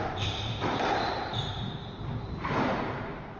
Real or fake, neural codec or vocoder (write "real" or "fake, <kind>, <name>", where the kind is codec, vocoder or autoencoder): fake, vocoder, BigVGAN v2